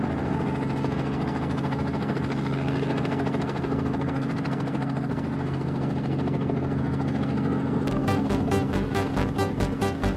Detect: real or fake fake